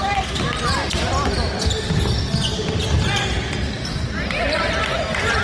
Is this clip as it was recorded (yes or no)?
yes